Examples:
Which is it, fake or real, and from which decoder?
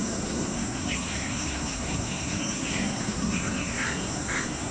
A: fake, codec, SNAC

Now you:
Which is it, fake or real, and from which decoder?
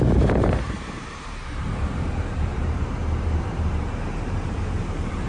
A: fake, vocoder, BigVGAN v2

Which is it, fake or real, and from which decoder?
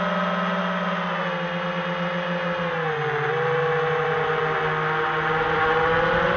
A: real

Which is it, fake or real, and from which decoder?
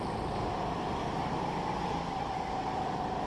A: real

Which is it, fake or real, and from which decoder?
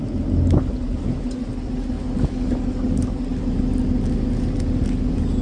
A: real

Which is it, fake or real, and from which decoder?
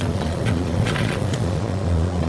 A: fake, vocoder, Vocos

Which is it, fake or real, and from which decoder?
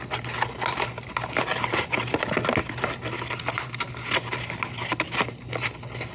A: real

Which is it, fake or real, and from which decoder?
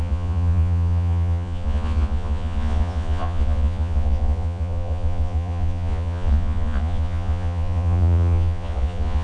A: fake, vocoder, Vocos